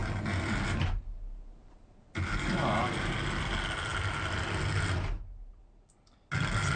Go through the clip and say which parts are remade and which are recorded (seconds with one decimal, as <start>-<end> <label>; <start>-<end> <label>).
0.0-6.8 recorded